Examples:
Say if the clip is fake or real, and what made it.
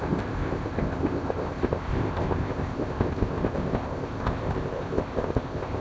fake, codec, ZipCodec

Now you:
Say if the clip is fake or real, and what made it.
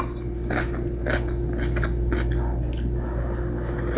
real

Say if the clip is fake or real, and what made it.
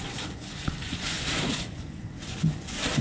fake, vocoder, Vocos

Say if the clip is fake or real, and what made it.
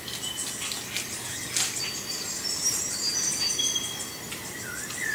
real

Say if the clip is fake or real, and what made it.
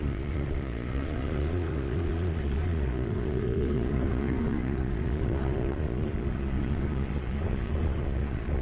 fake, vocoder, Vocos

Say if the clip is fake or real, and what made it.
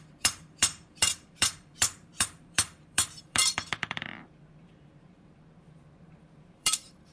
fake, vocoder, BigVGAN v2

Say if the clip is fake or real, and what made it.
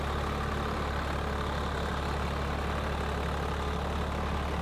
real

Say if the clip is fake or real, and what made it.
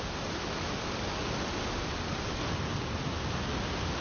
real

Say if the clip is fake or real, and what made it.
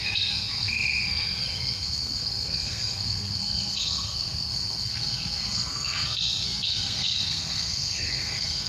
fake, codec, SNAC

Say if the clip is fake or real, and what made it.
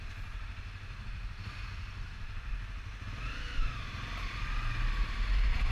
real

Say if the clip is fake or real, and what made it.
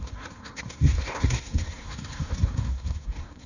fake, codec, SNAC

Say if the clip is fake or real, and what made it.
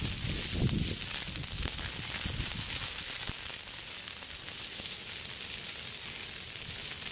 real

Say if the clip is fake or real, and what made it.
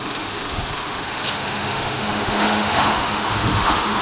fake, autoencoder, DAC-VAE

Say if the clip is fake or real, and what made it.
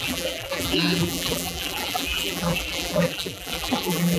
fake, vocoder, BigVGAN v2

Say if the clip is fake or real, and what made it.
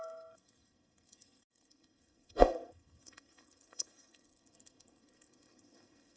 fake, codec, SNAC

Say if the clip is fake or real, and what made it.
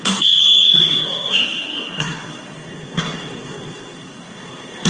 fake, codec, SNAC